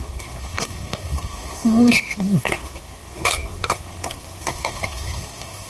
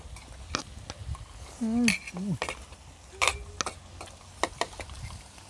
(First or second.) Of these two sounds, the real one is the second